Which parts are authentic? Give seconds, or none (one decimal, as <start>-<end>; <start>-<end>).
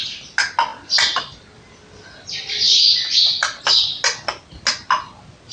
0.0-5.5